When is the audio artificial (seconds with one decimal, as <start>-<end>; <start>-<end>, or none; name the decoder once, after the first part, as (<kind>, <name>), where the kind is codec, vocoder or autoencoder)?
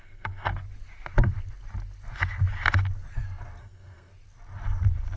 0.0-0.5 (codec, SNAC); 3.6-4.1